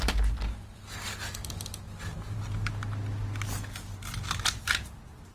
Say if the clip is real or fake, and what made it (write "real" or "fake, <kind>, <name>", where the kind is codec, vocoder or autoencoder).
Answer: real